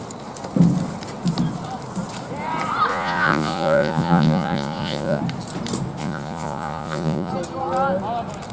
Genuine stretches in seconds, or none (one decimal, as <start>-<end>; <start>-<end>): 0.0-2.9; 5.2-6.0; 7.3-8.5

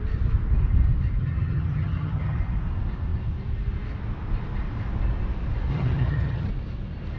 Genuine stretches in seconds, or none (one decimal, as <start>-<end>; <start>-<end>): 0.0-1.2; 2.4-5.7; 6.5-7.2

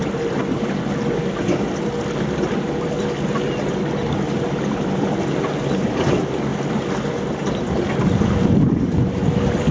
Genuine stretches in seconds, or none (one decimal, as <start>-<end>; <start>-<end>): 0.0-9.7

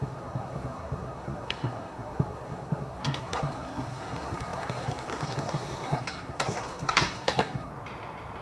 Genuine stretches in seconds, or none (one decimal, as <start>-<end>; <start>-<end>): 7.7-8.4

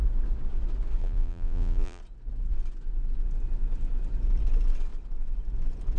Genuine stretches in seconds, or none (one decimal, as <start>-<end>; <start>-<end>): 0.0-1.0; 2.0-6.0

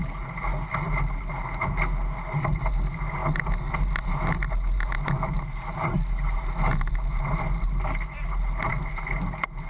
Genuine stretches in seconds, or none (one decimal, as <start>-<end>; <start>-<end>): 0.0-9.7

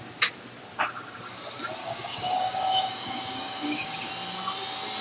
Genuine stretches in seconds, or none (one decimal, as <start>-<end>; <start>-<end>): 0.0-1.8; 4.1-5.0